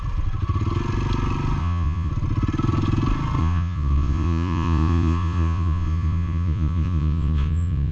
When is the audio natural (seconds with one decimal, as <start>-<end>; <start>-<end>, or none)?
0.0-1.6; 2.1-3.4